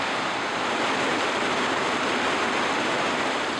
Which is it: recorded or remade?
recorded